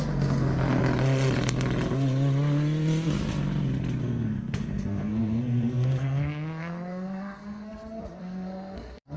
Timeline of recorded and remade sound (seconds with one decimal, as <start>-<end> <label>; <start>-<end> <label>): 0.0-0.8 remade; 0.8-4.0 recorded; 4.0-9.2 remade